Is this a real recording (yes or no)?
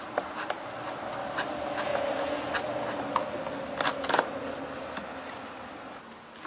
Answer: yes